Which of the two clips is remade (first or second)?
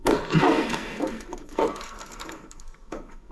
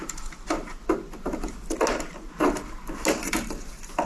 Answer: first